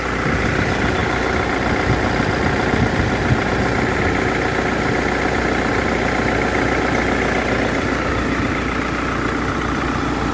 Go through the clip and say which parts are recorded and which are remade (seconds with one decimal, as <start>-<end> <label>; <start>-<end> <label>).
0.0-10.3 recorded